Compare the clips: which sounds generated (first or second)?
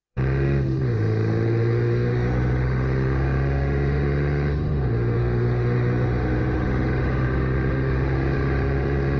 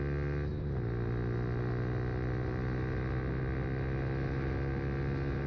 first